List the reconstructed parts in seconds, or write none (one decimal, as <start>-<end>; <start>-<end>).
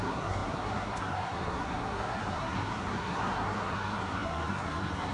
0.0-5.1